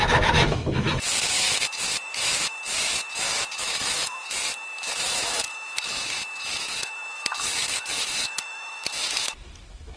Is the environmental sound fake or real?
fake